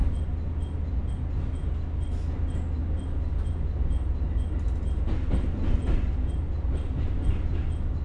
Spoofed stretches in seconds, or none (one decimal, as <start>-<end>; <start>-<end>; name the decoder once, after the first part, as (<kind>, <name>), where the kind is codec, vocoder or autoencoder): none